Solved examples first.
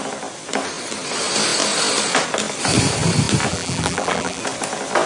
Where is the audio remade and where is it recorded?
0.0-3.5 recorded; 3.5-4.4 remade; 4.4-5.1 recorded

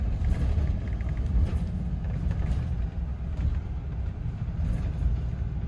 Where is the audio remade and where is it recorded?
0.0-5.7 recorded

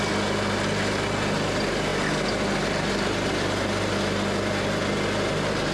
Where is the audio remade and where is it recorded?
0.0-5.7 recorded